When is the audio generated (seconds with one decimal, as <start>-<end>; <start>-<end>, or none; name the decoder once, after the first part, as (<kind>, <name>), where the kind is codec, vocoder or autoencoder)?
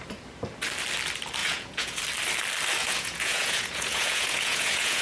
1.4-2.0 (vocoder, Vocos); 2.8-5.0